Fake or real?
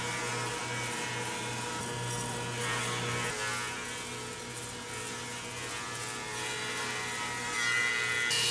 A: real